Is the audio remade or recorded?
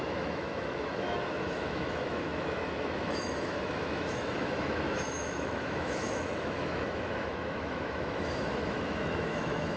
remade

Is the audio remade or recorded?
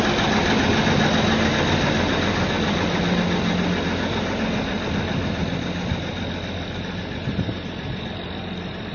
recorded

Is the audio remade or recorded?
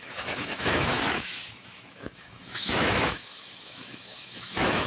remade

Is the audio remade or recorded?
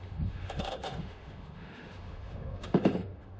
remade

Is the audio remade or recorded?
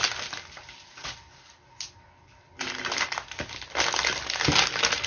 recorded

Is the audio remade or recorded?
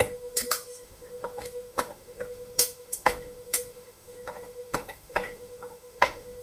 remade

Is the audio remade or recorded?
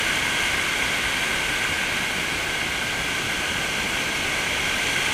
recorded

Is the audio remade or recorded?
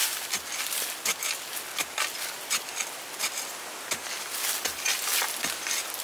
recorded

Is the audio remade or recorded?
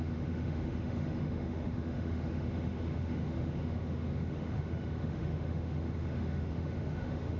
remade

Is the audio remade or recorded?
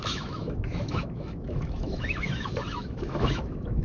remade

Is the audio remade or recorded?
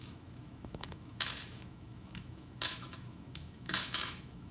remade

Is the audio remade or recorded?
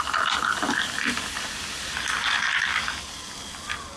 recorded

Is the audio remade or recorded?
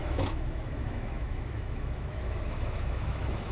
remade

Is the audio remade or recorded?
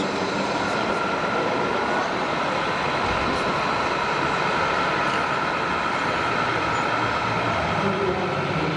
recorded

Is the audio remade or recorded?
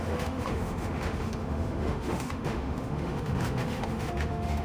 remade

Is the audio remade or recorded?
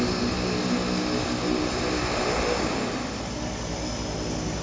recorded